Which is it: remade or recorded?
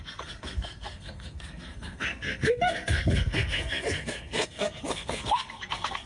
remade